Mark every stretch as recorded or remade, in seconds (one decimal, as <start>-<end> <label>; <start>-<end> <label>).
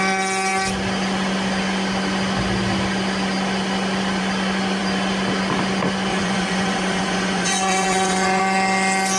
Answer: 0.0-6.1 recorded; 6.1-8.4 remade; 8.4-9.2 recorded